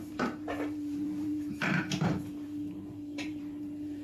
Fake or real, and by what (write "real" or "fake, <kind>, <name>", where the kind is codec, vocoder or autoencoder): fake, vocoder, BigVGAN v2